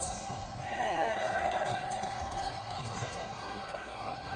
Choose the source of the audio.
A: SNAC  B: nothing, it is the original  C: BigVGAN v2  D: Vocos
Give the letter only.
A